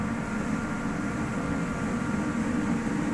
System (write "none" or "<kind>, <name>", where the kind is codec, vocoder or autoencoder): none